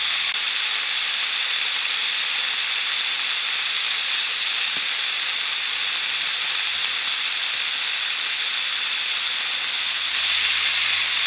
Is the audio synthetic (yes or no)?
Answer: no